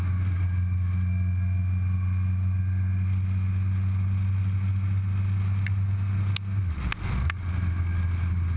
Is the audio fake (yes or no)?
no